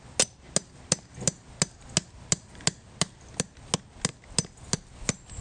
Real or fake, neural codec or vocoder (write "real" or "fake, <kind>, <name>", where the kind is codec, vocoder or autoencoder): real